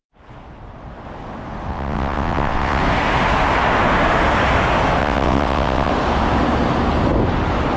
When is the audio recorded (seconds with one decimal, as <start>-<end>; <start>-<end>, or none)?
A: 0.0-1.7; 2.8-5.0; 5.9-7.8